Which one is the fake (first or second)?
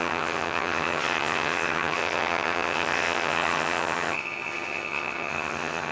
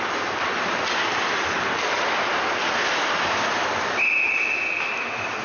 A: first